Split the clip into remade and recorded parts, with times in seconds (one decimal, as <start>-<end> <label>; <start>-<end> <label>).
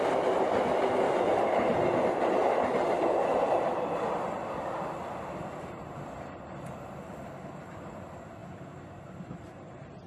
0.0-3.3 recorded; 3.3-4.7 remade; 4.7-10.1 recorded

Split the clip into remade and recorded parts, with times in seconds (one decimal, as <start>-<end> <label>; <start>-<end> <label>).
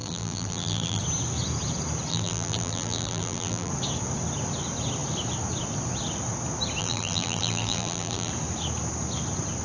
0.0-1.0 remade; 1.0-2.1 recorded; 2.1-3.7 remade; 3.7-6.8 recorded; 6.8-8.3 remade; 8.3-9.6 recorded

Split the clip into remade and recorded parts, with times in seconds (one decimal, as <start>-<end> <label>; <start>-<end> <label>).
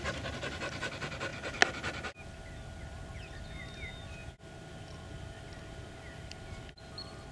0.0-7.3 recorded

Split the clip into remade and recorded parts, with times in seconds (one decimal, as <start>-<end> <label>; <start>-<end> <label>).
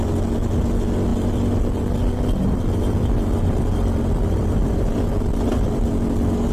0.0-1.1 recorded; 1.1-4.9 remade; 4.9-6.5 recorded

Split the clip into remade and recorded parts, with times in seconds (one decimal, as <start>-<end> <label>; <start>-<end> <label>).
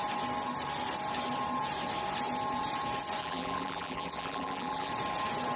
0.0-3.2 recorded; 3.2-4.9 remade; 4.9-5.6 recorded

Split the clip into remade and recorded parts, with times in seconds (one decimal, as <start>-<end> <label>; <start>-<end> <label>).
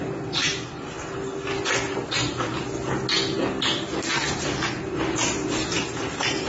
0.0-5.6 recorded; 5.6-6.5 remade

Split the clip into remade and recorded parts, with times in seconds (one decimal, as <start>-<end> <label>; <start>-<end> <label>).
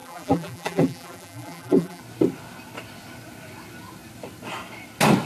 0.0-2.0 remade; 2.0-5.3 recorded